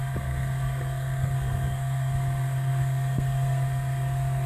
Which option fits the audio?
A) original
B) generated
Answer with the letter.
B